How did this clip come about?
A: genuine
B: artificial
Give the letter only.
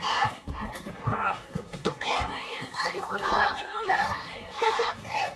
B